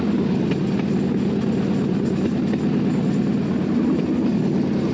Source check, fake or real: real